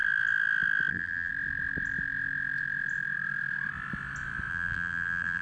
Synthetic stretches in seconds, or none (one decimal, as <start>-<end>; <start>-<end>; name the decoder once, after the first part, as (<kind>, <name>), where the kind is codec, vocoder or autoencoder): 0.9-1.3 (vocoder, BigVGAN v2); 4.5-5.4